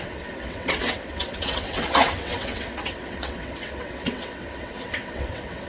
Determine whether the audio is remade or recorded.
remade